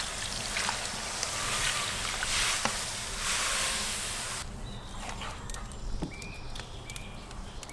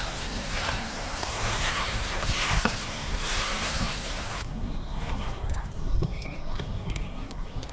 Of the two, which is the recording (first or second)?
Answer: first